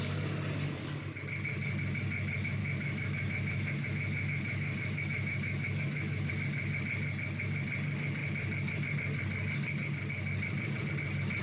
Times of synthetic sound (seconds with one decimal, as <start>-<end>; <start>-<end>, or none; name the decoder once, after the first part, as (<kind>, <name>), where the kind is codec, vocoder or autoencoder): 2.6-6.3 (autoencoder, DAC-VAE)